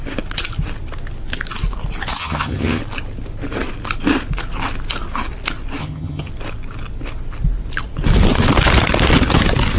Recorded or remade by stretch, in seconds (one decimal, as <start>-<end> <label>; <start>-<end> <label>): 0.0-2.2 recorded; 2.2-2.8 remade; 2.8-5.8 recorded; 5.8-6.3 remade; 6.3-9.8 recorded